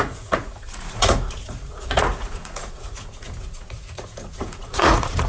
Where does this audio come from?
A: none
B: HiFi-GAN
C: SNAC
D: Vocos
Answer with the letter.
D